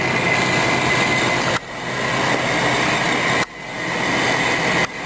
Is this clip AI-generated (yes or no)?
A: no